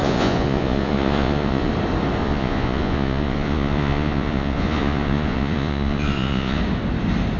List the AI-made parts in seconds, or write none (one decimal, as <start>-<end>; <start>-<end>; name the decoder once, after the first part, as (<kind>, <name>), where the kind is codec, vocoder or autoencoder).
0.0-1.7 (vocoder, Vocos); 2.2-6.6